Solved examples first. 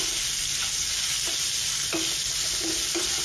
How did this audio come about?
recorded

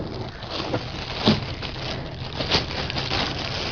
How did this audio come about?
recorded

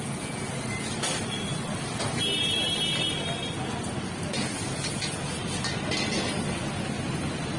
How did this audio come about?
recorded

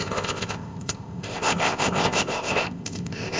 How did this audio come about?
remade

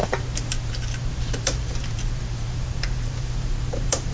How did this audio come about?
remade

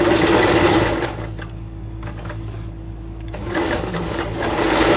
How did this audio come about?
remade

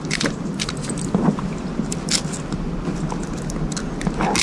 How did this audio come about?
recorded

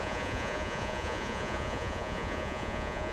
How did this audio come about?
remade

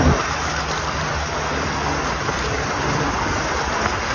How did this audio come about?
recorded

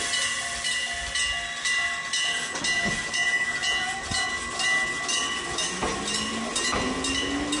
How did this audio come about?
recorded